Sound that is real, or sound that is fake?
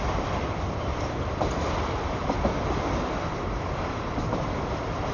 fake